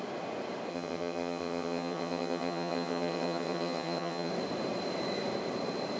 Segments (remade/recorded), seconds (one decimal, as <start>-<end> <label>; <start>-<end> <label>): 0.0-0.7 recorded; 0.7-4.3 remade; 4.3-6.0 recorded